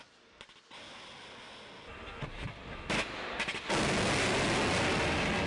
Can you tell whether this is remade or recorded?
recorded